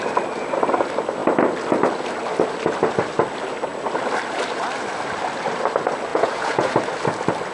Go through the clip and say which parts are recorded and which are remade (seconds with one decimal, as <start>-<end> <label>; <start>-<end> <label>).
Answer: 0.0-6.1 recorded; 6.1-6.7 remade; 6.7-7.5 recorded